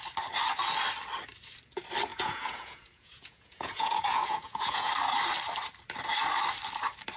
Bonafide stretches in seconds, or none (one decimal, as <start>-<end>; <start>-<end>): 0.0-2.1; 4.9-7.2